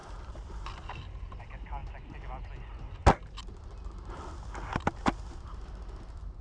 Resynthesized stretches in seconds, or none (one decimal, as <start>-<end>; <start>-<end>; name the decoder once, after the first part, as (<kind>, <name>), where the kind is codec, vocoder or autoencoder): none